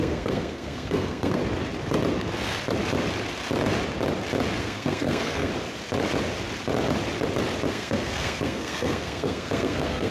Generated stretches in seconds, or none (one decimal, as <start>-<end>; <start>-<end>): 0.0-1.4; 4.6-5.5; 7.7-10.1